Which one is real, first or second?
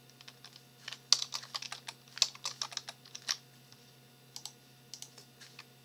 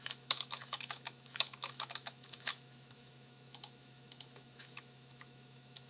first